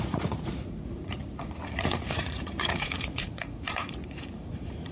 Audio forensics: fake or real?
fake